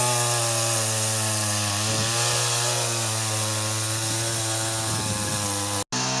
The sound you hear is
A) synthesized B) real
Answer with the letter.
B